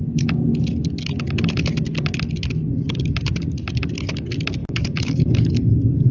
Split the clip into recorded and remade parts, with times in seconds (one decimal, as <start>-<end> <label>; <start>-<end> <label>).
0.0-4.6 recorded; 4.6-6.1 remade